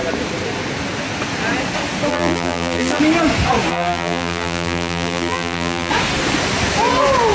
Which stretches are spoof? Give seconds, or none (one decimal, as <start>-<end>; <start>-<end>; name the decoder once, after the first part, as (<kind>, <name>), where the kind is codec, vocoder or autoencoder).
2.1-3.0 (vocoder, BigVGAN v2); 3.7-5.9